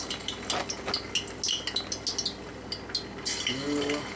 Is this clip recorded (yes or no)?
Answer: yes